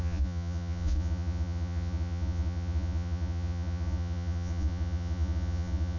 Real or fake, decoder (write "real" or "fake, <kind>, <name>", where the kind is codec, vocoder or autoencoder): fake, vocoder, Vocos